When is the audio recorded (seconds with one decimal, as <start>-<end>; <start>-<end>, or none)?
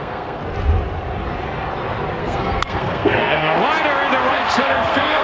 0.4-2.2; 3.6-4.3